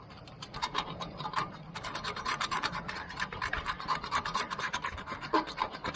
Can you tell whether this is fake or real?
fake